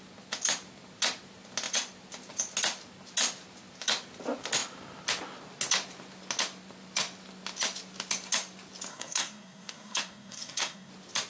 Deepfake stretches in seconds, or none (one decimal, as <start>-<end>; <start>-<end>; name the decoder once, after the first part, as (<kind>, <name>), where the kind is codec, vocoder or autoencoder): 8.9-10.9 (codec, SNAC)

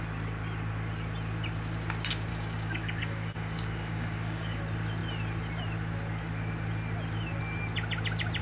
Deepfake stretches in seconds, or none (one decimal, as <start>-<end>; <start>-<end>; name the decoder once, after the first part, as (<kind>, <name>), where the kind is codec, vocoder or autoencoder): 2.3-4.6 (codec, DAC)

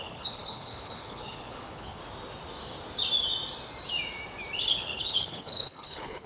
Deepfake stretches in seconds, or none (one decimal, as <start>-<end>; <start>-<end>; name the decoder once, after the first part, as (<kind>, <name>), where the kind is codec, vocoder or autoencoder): 0.0-2.0 (codec, HILCodec); 4.6-6.3

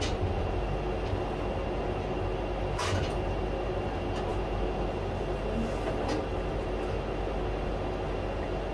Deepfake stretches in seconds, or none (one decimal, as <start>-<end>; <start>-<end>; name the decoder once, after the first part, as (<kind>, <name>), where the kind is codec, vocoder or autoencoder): none